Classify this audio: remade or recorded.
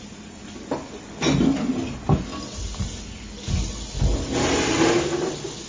recorded